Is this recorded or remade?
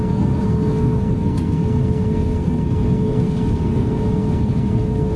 remade